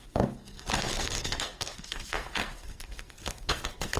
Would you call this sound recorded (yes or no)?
no